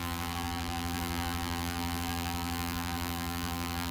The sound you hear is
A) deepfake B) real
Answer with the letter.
A